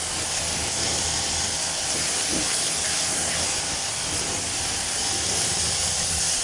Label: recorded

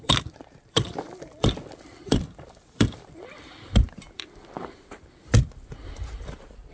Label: remade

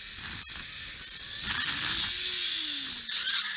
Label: recorded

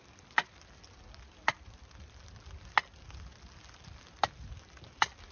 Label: recorded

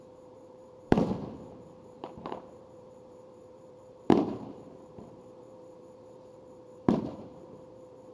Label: remade